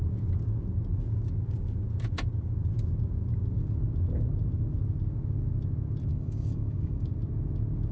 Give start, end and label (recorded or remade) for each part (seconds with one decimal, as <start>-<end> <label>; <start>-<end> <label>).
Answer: 0.0-6.1 recorded; 6.1-7.1 remade; 7.1-7.9 recorded

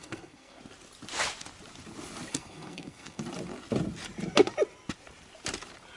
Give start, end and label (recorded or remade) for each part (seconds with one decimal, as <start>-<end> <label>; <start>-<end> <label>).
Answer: 0.0-0.6 remade; 0.6-2.3 recorded; 2.3-3.2 remade; 3.2-6.0 recorded

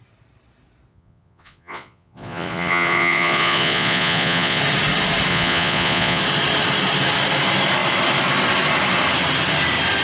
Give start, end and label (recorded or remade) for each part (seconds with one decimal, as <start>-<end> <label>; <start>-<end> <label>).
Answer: 0.0-0.9 recorded; 0.9-4.6 remade; 4.6-5.3 recorded; 5.3-6.2 remade; 6.2-10.0 recorded

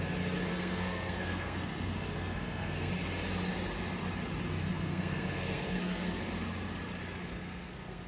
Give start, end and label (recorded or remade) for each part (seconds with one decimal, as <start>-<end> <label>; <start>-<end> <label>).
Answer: 0.0-0.5 recorded; 0.5-2.9 remade; 2.9-4.7 recorded; 4.7-6.2 remade; 6.2-7.3 recorded; 7.3-8.1 remade

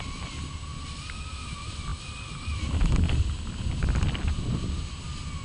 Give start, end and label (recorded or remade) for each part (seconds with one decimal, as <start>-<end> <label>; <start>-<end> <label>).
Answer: 0.0-5.4 recorded

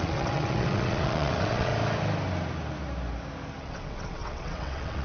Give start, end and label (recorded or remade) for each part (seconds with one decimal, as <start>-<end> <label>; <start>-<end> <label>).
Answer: 0.0-1.7 remade; 1.7-3.6 recorded; 3.6-5.0 remade

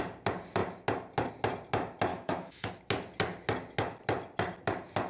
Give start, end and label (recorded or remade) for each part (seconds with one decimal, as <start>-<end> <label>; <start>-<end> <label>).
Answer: 0.0-2.1 recorded; 2.1-2.7 remade; 2.7-5.1 recorded